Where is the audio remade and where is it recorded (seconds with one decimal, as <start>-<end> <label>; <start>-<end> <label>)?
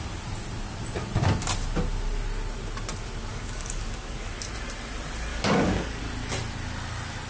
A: 0.0-3.3 recorded; 3.3-4.3 remade; 4.3-5.3 recorded; 5.3-6.0 remade; 6.0-7.3 recorded